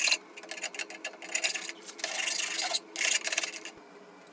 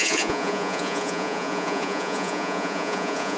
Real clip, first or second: first